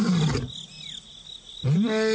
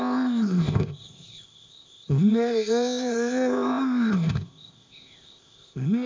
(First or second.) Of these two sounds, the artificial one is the second